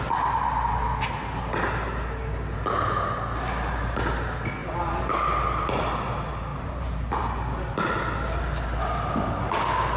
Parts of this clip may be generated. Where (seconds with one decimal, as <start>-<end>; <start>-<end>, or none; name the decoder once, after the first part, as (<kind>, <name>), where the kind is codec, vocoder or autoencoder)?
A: 6.5-7.2 (vocoder, BigVGAN v2)